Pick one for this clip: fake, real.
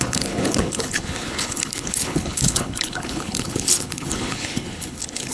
fake